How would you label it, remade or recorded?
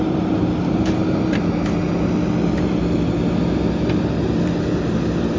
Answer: recorded